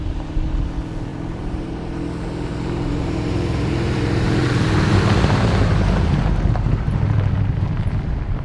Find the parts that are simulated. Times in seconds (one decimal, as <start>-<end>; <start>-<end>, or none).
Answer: 1.1-1.7; 2.5-7.3